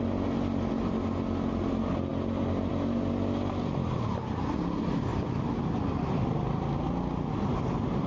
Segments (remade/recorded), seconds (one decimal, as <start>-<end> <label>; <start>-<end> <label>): 0.0-8.1 recorded